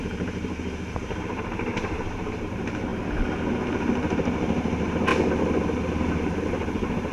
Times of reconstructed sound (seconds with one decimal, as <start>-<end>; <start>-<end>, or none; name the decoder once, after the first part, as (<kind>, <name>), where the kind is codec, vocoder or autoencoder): 0.0-2.9 (vocoder, BigVGAN v2); 3.7-5.1; 6.0-7.1